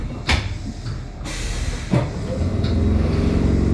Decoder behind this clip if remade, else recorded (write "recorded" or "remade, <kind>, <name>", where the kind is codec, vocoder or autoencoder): recorded